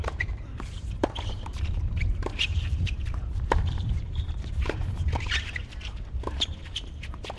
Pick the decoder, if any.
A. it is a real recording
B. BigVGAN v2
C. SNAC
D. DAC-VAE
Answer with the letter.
B